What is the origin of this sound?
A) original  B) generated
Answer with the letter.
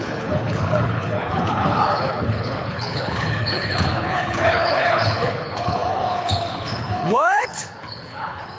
B